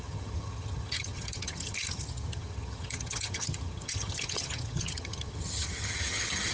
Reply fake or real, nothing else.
fake